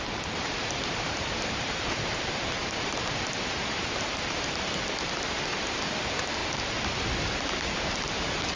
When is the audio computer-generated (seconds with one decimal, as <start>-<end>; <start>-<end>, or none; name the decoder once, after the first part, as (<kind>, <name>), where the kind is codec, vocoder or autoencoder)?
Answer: 0.0-6.4 (vocoder, BigVGAN v2); 7.2-8.6